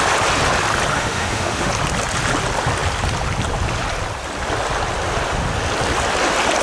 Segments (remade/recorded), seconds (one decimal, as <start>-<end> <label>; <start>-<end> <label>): 0.0-0.9 recorded; 0.9-1.7 remade; 1.7-6.6 recorded